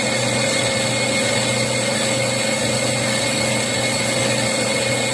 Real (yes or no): yes